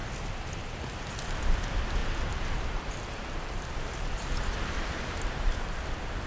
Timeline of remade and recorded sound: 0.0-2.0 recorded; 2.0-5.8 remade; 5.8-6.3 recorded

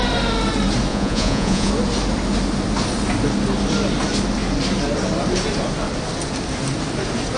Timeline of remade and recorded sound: 0.0-0.9 recorded; 0.9-1.7 remade; 1.7-7.4 recorded

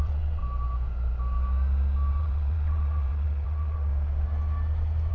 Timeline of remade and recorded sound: 0.0-0.4 remade; 0.4-2.2 recorded; 2.2-3.9 remade; 3.9-5.1 recorded

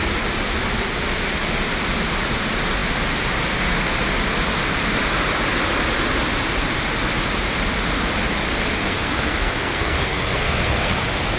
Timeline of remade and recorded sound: 0.0-8.8 recorded; 8.8-11.0 remade; 11.0-11.4 recorded

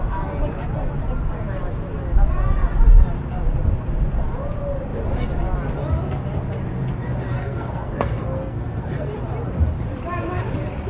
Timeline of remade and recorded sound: 0.0-7.4 recorded; 7.4-9.1 remade; 9.1-10.9 recorded

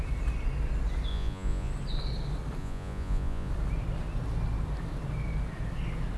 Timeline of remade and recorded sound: 0.0-1.1 recorded; 1.1-1.7 remade; 1.7-2.6 recorded; 2.6-3.5 remade; 3.5-6.2 recorded